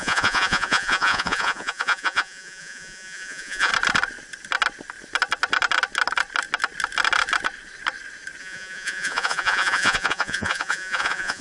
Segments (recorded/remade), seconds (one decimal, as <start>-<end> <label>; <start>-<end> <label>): 0.0-3.7 remade; 3.7-8.4 recorded; 8.4-11.4 remade